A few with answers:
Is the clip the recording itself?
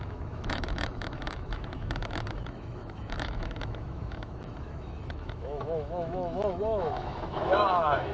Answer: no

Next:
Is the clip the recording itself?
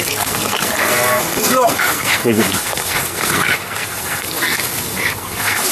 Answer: no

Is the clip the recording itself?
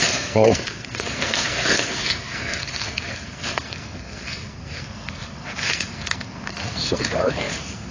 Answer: no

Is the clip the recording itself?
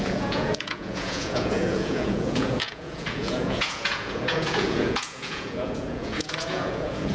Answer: no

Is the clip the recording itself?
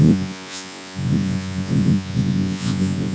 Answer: no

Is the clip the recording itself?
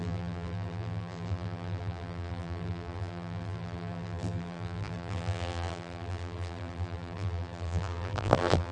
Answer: no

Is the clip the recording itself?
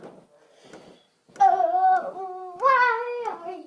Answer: yes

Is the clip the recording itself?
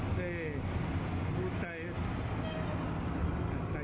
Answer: yes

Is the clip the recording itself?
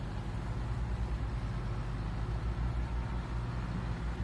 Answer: yes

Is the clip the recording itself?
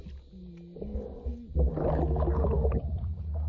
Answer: yes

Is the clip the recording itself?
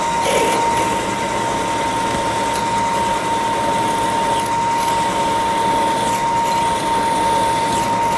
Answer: yes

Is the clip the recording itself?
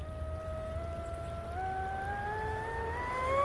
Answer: yes